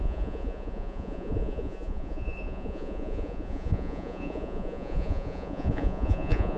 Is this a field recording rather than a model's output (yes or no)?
no